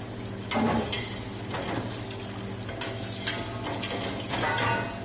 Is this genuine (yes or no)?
yes